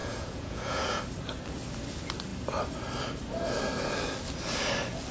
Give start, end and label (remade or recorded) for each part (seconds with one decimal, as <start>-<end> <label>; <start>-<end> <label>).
0.0-1.0 remade; 1.0-5.1 recorded